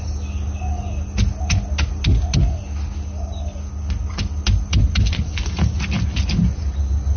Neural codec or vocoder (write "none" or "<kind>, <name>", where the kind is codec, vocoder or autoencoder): none